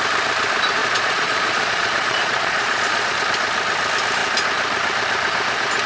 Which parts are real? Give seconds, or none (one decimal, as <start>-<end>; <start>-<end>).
0.0-0.8; 3.2-5.9